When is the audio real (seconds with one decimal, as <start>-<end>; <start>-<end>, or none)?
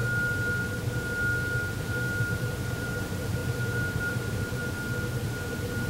0.0-1.8; 4.6-5.3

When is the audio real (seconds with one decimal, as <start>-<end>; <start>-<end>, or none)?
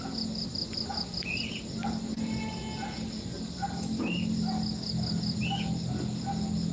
0.0-6.7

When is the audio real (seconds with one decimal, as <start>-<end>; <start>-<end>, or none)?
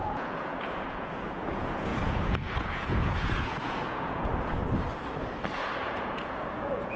4.3-5.8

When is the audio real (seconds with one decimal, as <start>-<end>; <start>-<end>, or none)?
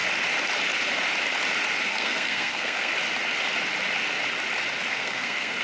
0.0-1.8; 2.9-4.9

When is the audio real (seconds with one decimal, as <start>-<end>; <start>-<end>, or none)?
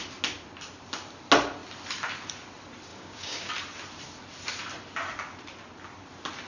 0.0-2.9; 3.5-6.5